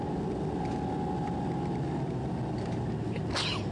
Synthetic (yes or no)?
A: no